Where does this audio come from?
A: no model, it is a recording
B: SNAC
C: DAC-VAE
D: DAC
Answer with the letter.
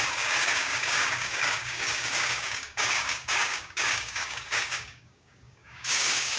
D